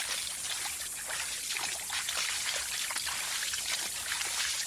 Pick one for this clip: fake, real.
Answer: real